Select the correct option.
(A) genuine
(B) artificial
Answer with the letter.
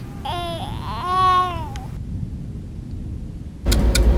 A